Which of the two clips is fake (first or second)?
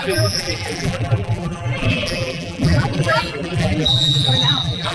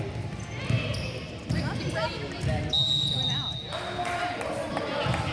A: first